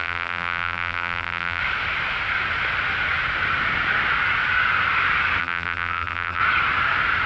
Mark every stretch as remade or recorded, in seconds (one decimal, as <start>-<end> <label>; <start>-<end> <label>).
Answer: 0.0-1.6 remade; 1.6-5.4 recorded; 5.4-6.4 remade; 6.4-7.3 recorded